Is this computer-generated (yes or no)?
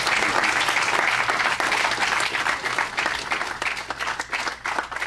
no